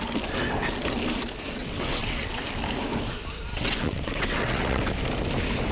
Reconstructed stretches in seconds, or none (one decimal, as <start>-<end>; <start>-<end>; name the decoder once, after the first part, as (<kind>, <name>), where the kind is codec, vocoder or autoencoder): 1.6-2.4 (vocoder, WaveNeXt); 3.5-4.8